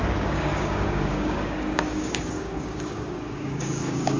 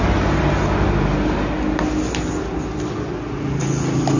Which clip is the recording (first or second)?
second